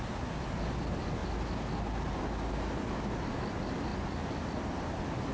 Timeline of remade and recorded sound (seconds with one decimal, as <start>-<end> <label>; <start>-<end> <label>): 0.0-5.3 recorded